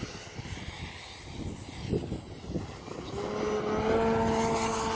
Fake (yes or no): no